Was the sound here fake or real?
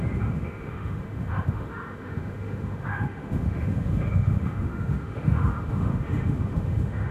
fake